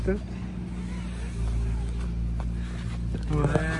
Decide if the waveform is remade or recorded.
recorded